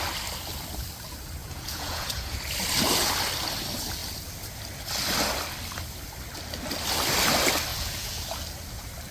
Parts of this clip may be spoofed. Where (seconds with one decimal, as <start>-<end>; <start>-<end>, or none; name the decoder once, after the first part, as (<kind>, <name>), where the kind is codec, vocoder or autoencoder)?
1.4-2.4 (vocoder, Vocos); 7.7-8.2